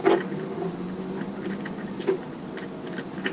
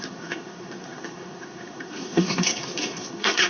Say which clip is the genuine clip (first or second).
first